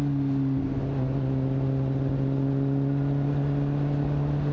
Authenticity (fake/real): real